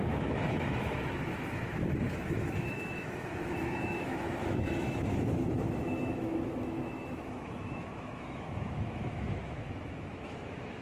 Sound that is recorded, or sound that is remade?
remade